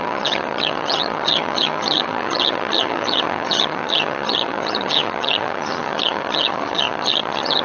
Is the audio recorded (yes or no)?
no